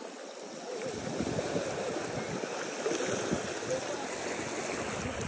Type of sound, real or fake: real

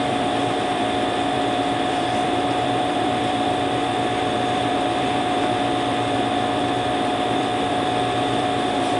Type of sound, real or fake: fake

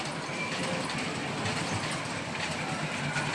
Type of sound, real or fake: fake